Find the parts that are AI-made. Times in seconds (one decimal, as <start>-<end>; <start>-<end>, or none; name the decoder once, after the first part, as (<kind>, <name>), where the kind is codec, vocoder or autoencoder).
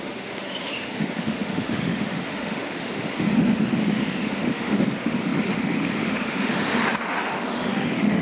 0.0-8.2 (autoencoder, DAC-VAE)